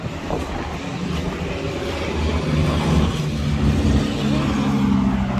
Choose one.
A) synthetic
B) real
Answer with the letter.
B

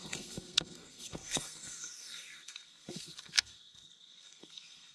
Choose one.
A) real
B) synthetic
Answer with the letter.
B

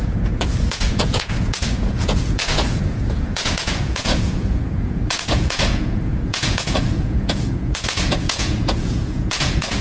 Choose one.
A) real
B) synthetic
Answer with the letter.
B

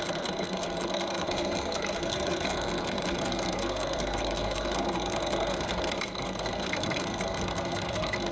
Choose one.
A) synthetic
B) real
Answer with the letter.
A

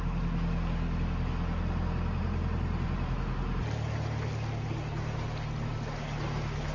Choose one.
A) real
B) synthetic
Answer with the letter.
A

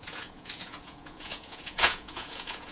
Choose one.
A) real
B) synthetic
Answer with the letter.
B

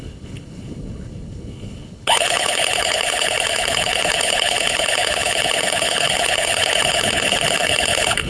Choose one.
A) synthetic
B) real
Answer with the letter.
A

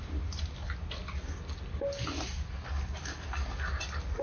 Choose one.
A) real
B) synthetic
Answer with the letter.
A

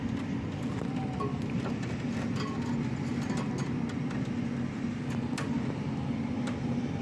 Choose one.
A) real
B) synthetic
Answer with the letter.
B